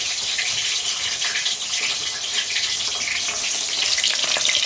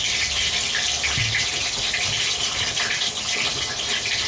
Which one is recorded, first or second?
second